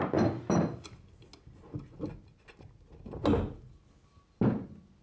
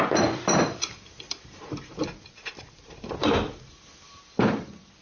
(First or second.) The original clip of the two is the first